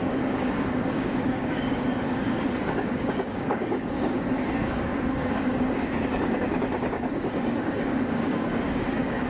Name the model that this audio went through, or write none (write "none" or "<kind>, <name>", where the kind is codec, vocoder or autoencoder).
codec, DAC